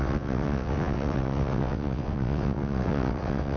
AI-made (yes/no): yes